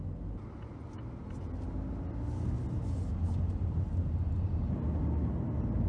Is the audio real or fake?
real